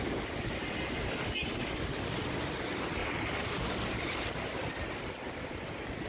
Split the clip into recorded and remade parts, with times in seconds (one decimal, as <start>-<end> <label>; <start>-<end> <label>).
0.0-3.0 recorded; 3.0-3.6 remade; 3.6-6.1 recorded